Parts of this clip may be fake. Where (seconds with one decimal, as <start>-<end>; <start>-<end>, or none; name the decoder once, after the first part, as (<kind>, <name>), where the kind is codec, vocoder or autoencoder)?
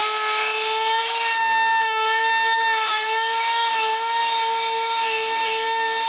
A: 0.0-6.1 (autoencoder, DAC-VAE)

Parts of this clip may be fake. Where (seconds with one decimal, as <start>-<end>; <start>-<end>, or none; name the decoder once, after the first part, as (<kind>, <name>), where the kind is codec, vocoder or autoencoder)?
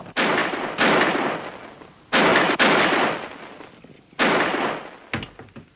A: 2.3-2.8 (autoencoder, DAC-VAE)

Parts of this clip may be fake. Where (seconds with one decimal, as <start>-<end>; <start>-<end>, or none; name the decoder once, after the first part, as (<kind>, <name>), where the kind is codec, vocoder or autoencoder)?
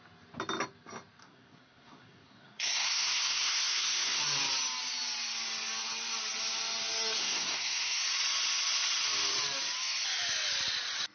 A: 1.2-4.2 (codec, SNAC); 7.2-8.0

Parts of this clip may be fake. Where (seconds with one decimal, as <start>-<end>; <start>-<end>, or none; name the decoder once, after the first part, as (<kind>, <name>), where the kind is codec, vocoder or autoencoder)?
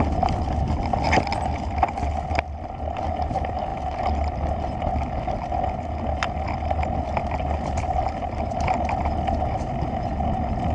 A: none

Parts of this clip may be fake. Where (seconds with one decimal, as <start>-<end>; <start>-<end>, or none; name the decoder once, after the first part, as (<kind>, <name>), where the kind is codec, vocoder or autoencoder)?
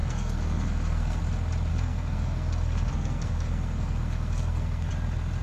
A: 0.0-1.2 (codec, SNAC); 1.7-4.9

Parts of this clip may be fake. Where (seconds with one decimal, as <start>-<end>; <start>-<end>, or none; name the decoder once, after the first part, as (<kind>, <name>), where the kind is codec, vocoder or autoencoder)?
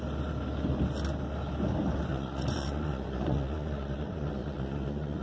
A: 2.1-5.2 (vocoder, Vocos)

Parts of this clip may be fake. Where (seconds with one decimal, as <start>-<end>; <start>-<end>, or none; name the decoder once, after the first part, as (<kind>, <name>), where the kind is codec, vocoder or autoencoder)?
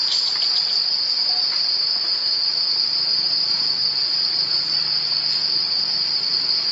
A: 0.0-1.0 (vocoder, BigVGAN v2); 4.1-4.8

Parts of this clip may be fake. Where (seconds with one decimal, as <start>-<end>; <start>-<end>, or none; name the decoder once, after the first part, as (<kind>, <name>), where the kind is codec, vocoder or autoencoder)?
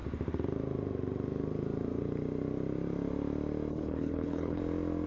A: 3.7-4.6 (codec, HILCodec)